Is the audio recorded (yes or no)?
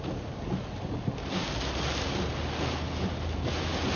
yes